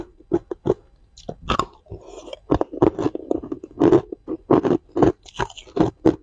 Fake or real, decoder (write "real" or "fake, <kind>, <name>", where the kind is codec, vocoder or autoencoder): real